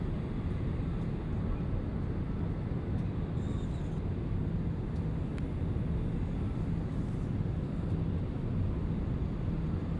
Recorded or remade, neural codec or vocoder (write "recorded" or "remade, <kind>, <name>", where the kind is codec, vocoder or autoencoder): recorded